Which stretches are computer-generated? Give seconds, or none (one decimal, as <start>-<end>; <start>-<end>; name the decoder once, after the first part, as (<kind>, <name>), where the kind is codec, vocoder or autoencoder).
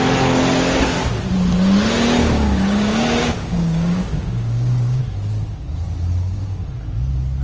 2.2-5.0 (codec, DAC)